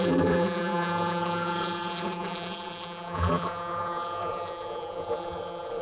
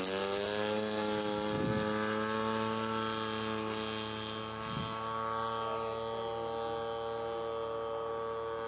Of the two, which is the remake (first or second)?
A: first